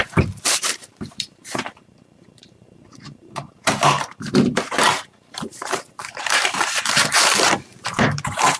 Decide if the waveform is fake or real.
fake